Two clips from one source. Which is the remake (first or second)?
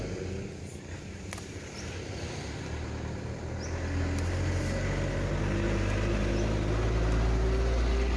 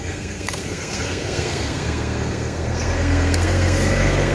second